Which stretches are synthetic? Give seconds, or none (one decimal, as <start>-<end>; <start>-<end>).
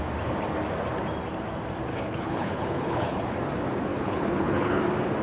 1.9-3.2; 3.9-4.8